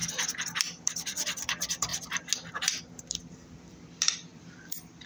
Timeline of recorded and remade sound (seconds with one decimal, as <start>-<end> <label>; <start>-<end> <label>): 0.0-1.9 remade; 1.9-2.8 recorded; 2.8-5.1 remade